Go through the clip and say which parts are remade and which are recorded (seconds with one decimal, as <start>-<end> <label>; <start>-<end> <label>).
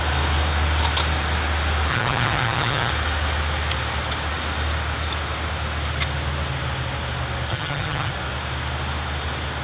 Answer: 0.0-1.9 recorded; 1.9-2.9 remade; 2.9-7.5 recorded; 7.5-8.1 remade; 8.1-9.6 recorded